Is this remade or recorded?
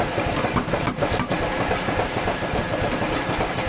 recorded